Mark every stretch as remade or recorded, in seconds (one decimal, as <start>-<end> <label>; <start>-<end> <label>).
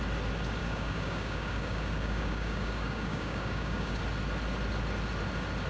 0.0-0.6 recorded; 0.6-4.0 remade; 4.0-5.7 recorded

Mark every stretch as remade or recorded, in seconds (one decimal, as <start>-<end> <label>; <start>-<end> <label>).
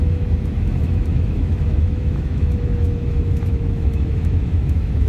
0.0-5.1 remade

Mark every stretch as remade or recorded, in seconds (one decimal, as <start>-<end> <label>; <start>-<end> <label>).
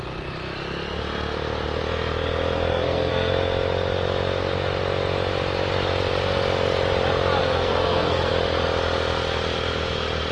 0.0-2.7 recorded; 2.7-3.3 remade; 3.3-7.4 recorded; 7.4-8.3 remade; 8.3-10.3 recorded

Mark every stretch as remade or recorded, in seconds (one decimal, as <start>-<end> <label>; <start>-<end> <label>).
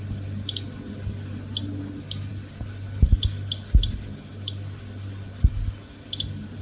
0.0-6.6 recorded